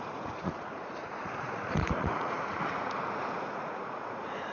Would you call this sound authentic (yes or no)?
no